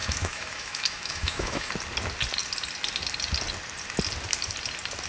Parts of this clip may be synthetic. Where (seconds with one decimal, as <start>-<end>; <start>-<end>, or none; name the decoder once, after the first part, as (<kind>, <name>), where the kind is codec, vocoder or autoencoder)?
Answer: 0.0-1.7 (autoencoder, DAC-VAE)